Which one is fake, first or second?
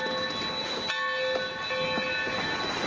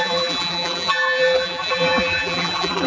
second